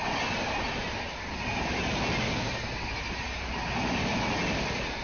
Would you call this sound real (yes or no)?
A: yes